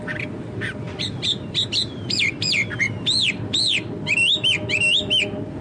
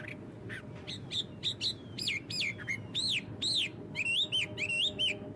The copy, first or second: first